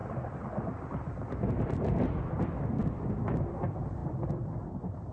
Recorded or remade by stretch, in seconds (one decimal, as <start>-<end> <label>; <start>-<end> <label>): 0.0-3.1 remade; 3.1-4.0 recorded; 4.0-5.1 remade